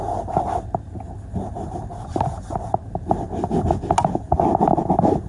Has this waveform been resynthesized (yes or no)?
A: no